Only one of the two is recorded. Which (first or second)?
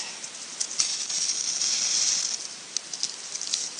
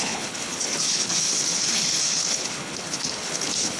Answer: first